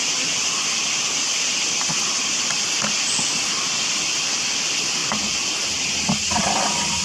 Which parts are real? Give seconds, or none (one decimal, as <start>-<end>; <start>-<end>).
0.0-7.0